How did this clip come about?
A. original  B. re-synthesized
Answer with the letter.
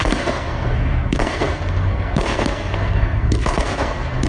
B